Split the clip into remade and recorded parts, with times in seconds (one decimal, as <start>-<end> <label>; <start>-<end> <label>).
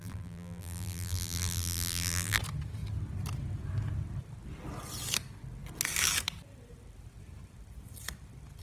0.0-2.4 remade; 2.4-8.6 recorded